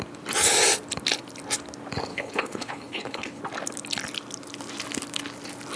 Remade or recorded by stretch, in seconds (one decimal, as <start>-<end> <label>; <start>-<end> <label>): 0.0-2.1 recorded; 2.1-3.4 remade; 3.4-5.8 recorded